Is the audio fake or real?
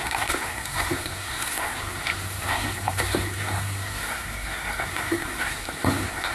fake